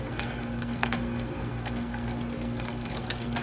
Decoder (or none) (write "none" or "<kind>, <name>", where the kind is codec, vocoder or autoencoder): codec, SNAC